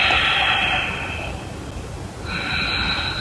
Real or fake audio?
real